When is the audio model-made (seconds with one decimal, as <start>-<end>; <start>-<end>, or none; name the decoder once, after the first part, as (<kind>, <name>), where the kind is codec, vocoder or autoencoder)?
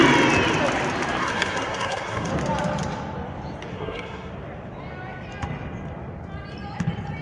1.2-2.3 (codec, SNAC); 3.7-4.3